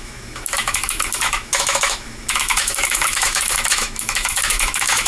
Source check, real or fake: fake